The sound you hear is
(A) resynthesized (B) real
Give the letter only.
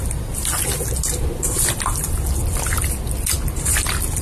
B